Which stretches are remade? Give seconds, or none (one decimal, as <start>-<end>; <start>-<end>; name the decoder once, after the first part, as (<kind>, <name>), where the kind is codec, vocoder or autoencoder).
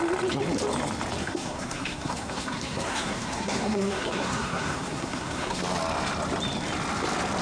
1.2-5.6 (codec, SNAC)